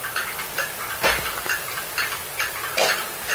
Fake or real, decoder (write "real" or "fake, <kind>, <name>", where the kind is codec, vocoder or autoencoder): real